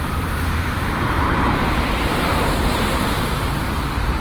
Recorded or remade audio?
remade